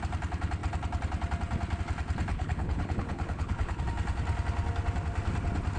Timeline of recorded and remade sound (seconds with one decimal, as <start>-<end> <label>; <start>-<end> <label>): 0.0-2.3 recorded; 2.3-3.8 remade; 3.8-5.8 recorded